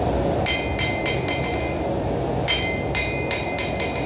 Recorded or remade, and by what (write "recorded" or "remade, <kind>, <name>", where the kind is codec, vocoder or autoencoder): recorded